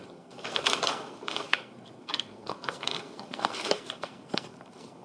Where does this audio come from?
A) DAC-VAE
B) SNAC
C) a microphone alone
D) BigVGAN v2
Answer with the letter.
B